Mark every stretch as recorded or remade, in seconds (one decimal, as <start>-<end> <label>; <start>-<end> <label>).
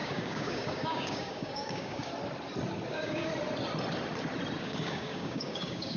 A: 0.0-2.1 remade; 2.1-2.9 recorded; 2.9-3.3 remade; 3.3-4.6 recorded; 4.6-6.0 remade